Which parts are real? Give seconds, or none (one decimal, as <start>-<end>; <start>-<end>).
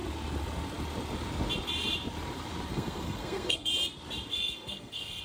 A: 0.0-2.7; 3.7-4.3